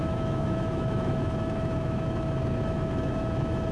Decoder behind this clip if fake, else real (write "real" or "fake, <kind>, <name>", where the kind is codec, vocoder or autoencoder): fake, autoencoder, DAC-VAE